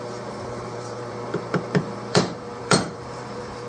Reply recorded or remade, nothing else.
remade